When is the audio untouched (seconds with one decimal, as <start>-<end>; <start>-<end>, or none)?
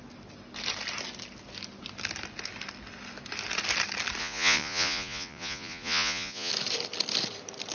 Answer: 0.0-4.2; 6.5-7.7